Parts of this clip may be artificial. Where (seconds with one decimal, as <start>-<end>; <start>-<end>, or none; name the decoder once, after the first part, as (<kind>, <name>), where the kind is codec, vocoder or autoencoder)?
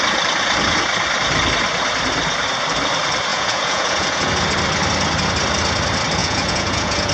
3.3-4.3 (vocoder, Vocos); 6.2-7.1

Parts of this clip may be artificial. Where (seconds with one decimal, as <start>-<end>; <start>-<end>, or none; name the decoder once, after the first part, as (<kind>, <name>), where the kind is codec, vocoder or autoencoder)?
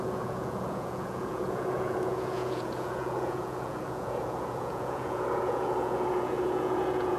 0.0-7.2 (vocoder, Vocos)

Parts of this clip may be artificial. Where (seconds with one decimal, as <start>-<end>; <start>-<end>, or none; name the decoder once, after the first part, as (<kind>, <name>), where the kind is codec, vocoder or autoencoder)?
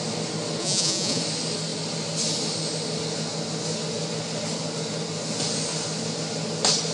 0.6-1.2 (vocoder, Vocos)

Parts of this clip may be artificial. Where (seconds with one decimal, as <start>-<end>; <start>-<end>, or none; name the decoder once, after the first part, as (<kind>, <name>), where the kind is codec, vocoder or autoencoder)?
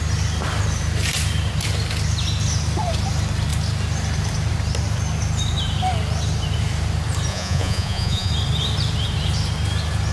7.3-8.3 (vocoder, Vocos)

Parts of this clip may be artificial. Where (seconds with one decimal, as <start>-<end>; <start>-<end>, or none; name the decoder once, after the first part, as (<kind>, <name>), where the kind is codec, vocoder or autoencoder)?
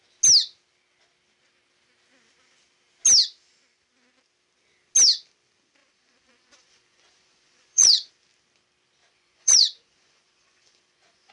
5.8-8.1 (vocoder, Vocos); 9.0-11.3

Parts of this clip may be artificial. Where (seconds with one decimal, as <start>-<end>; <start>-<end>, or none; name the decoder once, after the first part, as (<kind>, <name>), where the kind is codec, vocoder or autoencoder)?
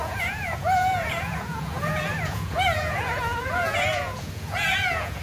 0.0-5.2 (vocoder, Vocos)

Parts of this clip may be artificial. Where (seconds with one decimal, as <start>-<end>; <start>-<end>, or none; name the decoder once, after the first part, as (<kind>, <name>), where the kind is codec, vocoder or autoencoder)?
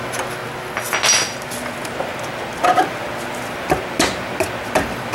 none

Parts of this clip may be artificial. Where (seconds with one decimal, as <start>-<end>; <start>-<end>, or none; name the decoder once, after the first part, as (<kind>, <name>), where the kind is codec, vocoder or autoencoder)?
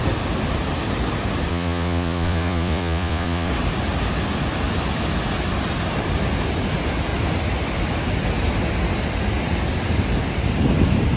1.5-3.5 (vocoder, Vocos)